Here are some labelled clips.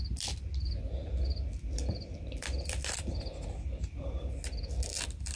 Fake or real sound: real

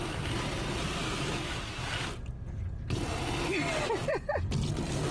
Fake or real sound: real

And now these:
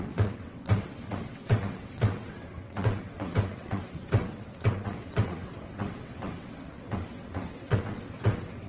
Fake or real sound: fake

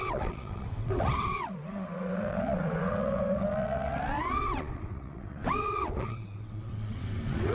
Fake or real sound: fake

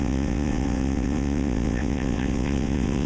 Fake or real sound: fake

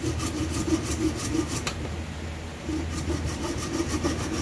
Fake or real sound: real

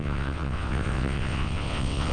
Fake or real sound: fake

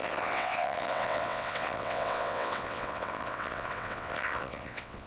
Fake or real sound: fake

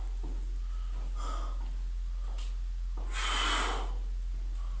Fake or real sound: real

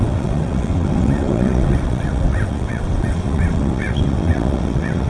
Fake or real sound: fake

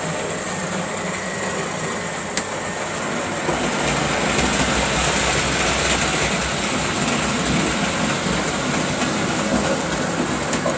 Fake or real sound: real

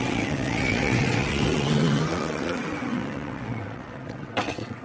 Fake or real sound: fake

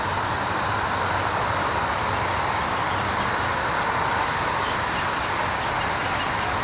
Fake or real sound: real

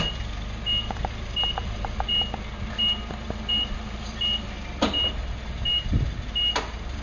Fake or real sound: real